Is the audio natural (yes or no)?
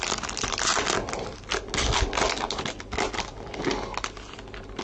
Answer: yes